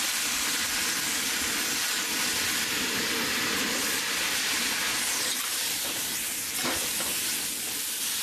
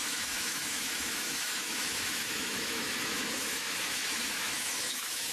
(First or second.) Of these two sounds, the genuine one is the first